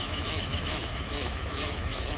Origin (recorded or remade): remade